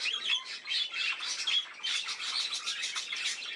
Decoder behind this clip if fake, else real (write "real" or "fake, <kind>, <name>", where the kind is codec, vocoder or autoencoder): fake, vocoder, BigVGAN v2